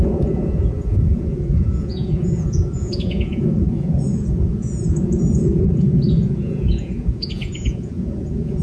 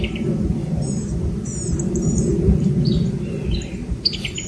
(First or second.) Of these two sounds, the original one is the second